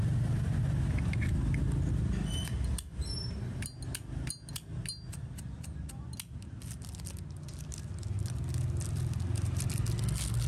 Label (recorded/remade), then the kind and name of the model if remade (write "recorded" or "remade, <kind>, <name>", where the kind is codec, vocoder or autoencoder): recorded